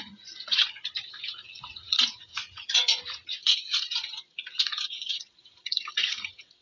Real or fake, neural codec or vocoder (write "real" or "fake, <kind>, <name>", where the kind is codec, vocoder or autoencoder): fake, vocoder, Vocos